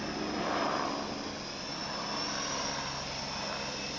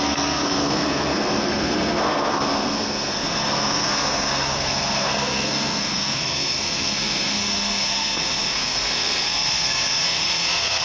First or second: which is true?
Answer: first